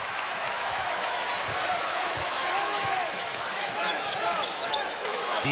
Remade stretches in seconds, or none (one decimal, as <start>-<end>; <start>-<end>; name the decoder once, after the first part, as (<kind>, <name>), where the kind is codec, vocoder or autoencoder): 0.0-1.3 (autoencoder, DAC-VAE); 1.8-5.5